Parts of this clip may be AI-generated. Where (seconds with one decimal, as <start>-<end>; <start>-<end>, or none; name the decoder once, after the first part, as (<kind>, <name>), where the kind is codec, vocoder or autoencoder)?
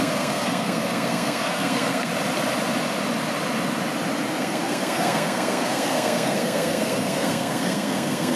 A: 0.0-2.1 (codec, SNAC); 4.4-8.4